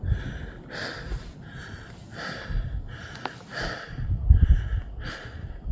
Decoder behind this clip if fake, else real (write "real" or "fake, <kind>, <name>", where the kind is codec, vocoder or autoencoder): real